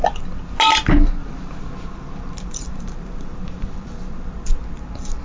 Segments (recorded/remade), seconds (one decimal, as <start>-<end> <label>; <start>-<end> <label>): 0.0-1.2 recorded; 1.2-4.3 remade; 4.3-5.2 recorded